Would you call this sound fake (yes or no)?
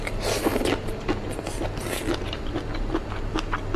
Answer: no